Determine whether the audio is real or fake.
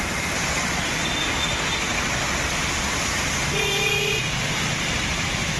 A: real